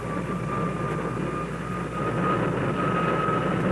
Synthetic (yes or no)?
no